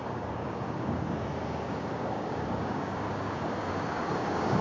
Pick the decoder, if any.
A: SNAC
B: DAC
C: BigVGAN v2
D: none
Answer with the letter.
B